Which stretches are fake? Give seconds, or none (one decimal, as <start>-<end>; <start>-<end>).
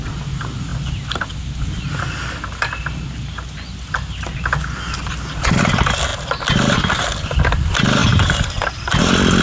none